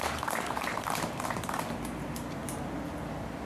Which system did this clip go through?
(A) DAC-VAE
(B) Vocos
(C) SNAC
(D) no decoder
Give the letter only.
D